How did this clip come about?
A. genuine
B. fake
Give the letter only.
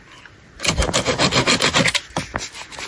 A